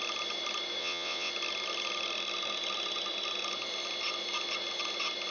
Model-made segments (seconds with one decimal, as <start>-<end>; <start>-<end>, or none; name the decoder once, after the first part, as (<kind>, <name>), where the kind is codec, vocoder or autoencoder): 0.8-1.3 (vocoder, WaveNeXt)